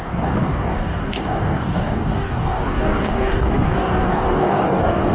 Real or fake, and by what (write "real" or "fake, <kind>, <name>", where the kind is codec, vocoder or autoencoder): fake, codec, DAC